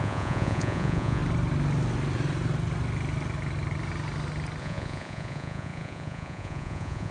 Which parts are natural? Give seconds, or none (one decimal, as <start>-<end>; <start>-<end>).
1.2-4.6